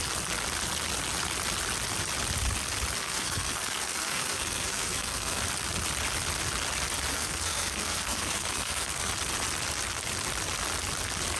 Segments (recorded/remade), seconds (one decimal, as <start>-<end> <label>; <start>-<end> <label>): 0.0-3.0 recorded; 3.0-5.4 remade; 5.4-7.1 recorded; 7.1-9.1 remade; 9.1-11.4 recorded